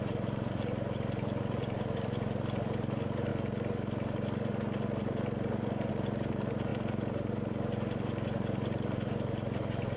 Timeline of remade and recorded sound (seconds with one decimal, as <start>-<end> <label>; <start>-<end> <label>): 0.0-3.3 remade; 3.3-5.9 recorded; 5.9-10.0 remade